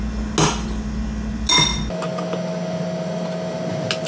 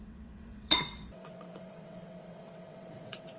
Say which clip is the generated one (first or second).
second